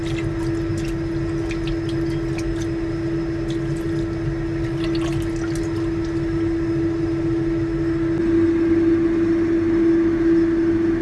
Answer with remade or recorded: recorded